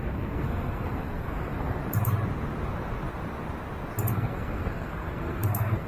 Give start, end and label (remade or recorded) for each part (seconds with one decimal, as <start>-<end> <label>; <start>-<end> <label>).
0.0-1.8 remade; 1.8-4.1 recorded; 4.1-5.9 remade